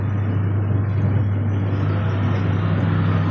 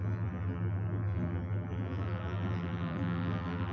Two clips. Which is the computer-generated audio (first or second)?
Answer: second